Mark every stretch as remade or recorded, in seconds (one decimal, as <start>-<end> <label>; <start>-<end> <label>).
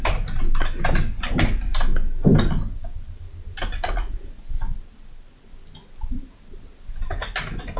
0.0-7.8 recorded